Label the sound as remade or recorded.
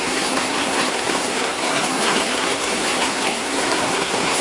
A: remade